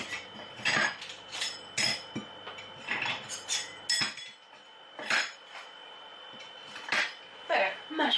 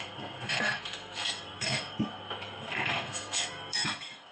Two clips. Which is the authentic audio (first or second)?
first